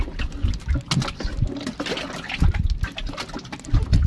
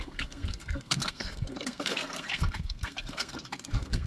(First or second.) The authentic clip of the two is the first